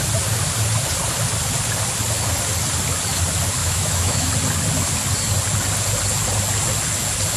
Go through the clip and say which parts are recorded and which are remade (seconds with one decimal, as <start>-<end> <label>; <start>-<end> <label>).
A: 0.0-3.6 recorded; 3.6-4.3 remade; 4.3-7.4 recorded